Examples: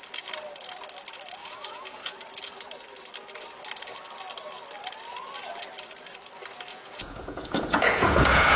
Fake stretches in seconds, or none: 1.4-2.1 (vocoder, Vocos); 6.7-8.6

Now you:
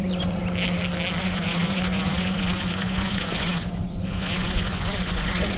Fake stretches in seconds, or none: 0.0-0.4 (vocoder, Vocos); 1.2-5.6

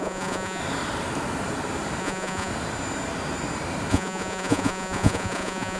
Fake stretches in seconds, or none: 0.0-0.6 (vocoder, Vocos); 2.0-2.5; 3.9-5.8